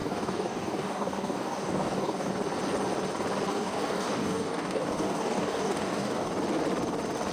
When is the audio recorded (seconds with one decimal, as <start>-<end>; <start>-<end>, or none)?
2.3-3.5; 6.3-7.3